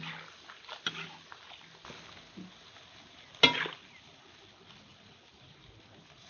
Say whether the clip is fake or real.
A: real